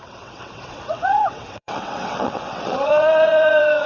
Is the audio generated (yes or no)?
yes